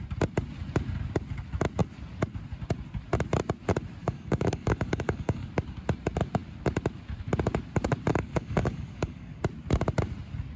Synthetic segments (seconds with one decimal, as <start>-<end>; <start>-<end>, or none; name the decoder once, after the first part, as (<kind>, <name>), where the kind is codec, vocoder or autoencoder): 4.0-5.5 (codec, DAC); 8.1-9.4